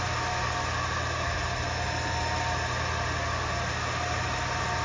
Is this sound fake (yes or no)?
no